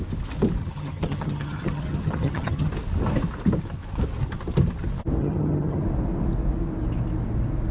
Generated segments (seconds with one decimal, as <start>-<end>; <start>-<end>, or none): 0.6-2.7; 5.2-5.8